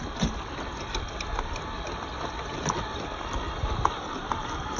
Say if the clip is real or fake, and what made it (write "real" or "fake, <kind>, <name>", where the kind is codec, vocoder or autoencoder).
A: real